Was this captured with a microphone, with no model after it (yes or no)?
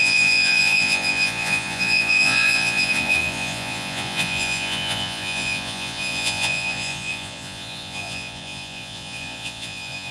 no